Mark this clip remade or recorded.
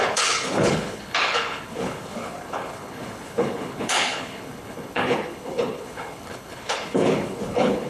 remade